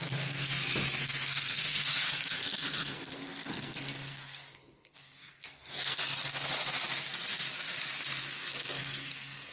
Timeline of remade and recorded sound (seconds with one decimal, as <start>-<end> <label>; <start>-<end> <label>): 0.0-0.5 remade; 0.5-1.0 recorded; 1.0-6.0 remade; 6.0-8.2 recorded; 8.2-9.5 remade